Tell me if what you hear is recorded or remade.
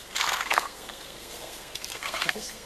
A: remade